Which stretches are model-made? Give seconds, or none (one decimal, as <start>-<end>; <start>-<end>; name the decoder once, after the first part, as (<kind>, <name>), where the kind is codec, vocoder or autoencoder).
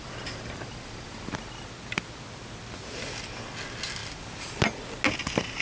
none